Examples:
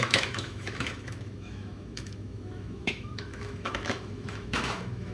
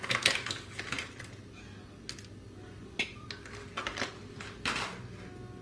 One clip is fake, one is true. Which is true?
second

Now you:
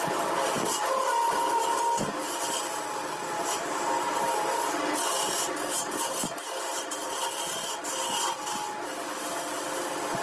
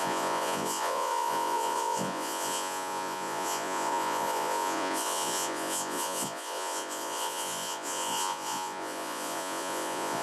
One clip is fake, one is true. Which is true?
first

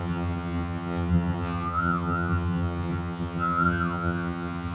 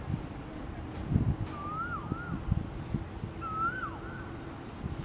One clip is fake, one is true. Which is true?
second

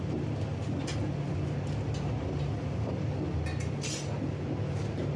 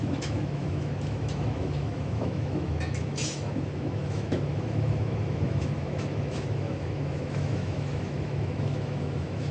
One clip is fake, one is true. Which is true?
first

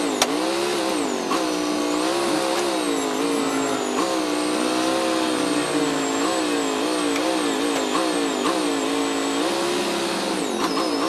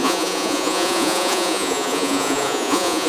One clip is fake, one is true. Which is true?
first